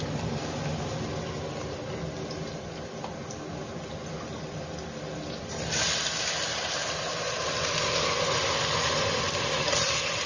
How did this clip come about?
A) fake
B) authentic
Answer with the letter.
B